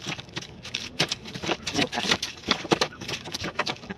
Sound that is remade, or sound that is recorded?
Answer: remade